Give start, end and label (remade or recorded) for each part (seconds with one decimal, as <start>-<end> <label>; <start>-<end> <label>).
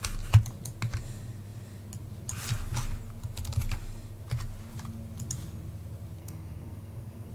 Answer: 0.0-6.2 recorded; 6.2-7.3 remade